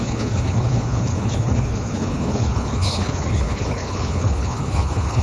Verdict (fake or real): fake